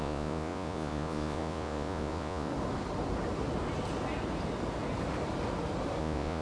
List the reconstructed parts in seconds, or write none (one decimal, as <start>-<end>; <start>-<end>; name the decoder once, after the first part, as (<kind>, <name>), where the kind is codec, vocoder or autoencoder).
0.0-2.5 (vocoder, Vocos); 6.0-6.4